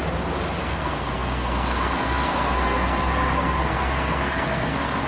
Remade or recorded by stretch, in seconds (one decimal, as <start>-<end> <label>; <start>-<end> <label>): 0.0-0.6 recorded; 0.6-5.1 remade